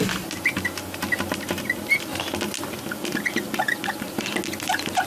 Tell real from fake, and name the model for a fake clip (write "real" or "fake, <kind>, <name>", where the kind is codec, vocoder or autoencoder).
real